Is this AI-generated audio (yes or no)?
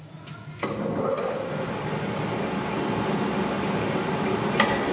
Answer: no